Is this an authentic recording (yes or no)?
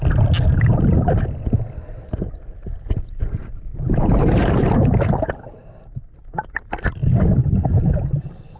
yes